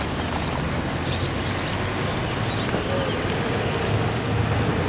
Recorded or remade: recorded